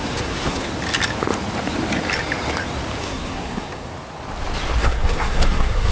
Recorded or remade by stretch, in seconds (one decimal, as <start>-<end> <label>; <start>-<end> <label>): 0.0-0.7 remade; 0.7-3.0 recorded; 3.0-3.9 remade; 3.9-4.8 recorded; 4.8-5.9 remade